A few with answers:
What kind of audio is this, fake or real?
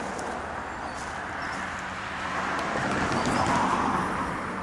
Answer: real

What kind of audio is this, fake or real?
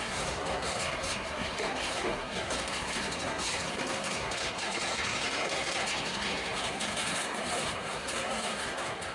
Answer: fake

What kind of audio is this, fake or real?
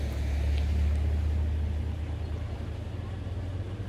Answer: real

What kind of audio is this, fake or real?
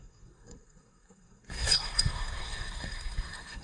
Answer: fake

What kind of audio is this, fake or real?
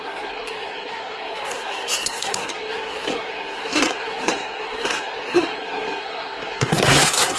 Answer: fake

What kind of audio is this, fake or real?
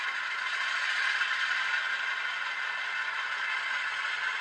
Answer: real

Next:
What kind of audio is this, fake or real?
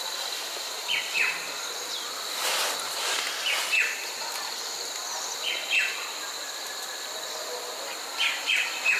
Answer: real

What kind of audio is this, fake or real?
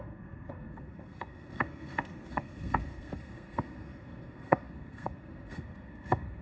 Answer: fake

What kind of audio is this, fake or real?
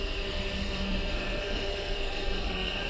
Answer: fake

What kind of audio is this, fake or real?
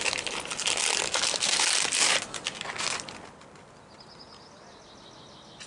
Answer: real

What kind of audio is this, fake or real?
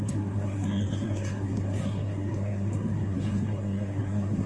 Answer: fake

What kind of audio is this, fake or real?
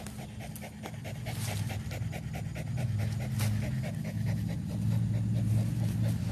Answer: real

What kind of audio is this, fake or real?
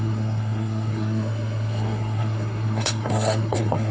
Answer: fake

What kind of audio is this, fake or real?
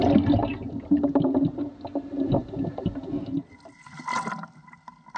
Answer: real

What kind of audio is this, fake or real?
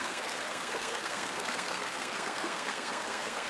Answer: fake